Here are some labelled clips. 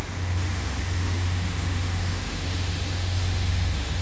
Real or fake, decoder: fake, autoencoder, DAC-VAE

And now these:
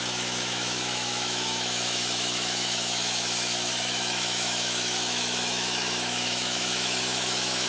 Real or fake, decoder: fake, autoencoder, DAC-VAE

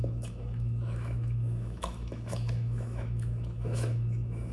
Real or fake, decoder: fake, autoencoder, DAC-VAE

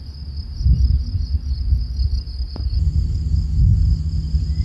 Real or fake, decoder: real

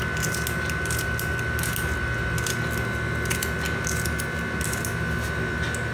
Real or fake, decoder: real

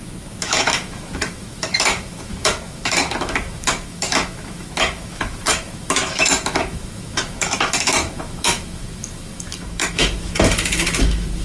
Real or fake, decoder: fake, autoencoder, DAC-VAE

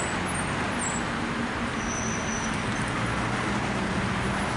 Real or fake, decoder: real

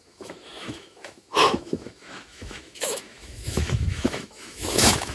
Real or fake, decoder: fake, autoencoder, DAC-VAE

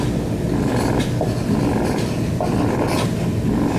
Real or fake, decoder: real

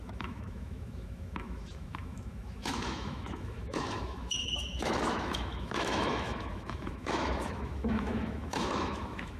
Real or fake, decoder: fake, autoencoder, DAC-VAE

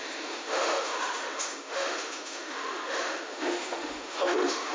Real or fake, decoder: fake, autoencoder, DAC-VAE